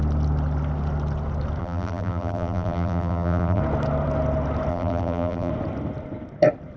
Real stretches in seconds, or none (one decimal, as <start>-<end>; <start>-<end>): 0.0-1.6; 3.6-4.7; 5.5-6.8